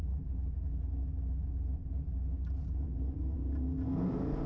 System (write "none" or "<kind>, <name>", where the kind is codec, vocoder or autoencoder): none